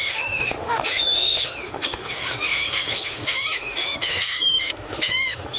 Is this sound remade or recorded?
remade